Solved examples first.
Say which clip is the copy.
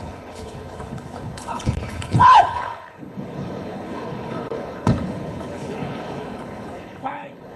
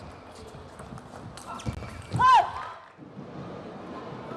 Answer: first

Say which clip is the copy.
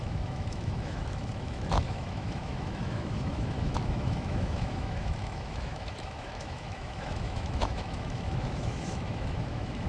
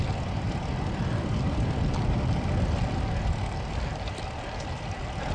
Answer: first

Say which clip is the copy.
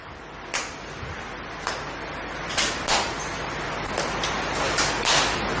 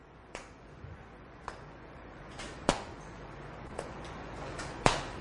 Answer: second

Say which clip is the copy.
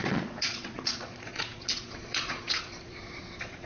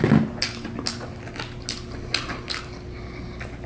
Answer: first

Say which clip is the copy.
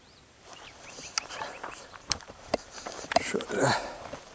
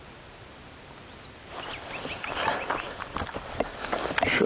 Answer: first